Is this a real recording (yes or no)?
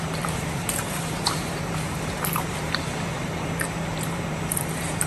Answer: no